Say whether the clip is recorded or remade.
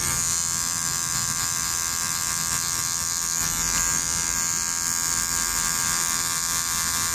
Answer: recorded